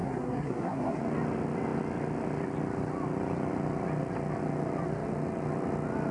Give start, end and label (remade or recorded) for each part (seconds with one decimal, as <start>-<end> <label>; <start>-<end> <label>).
0.0-1.0 remade; 1.0-6.1 recorded